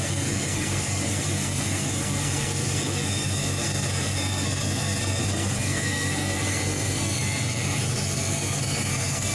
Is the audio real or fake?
fake